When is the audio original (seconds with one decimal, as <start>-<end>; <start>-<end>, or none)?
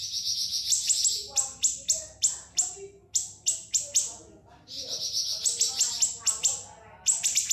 0.0-7.5